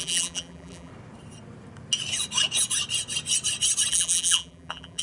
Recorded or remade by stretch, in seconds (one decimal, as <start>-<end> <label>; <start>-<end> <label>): 0.0-0.9 remade; 0.9-3.9 recorded; 3.9-5.0 remade